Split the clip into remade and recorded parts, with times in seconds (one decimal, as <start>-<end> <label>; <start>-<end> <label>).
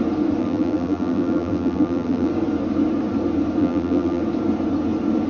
0.0-0.4 recorded; 0.4-2.3 remade; 2.3-3.6 recorded; 3.6-4.2 remade; 4.2-5.3 recorded